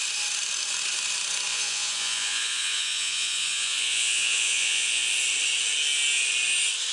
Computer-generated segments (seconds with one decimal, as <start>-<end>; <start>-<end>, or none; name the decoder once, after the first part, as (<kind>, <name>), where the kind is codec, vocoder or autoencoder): 1.5-5.1 (vocoder, Vocos)